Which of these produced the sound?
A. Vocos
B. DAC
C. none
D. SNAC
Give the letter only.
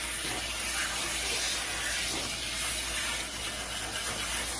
C